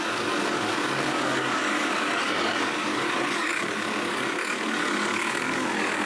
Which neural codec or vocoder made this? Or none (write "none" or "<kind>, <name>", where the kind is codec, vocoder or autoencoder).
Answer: codec, DAC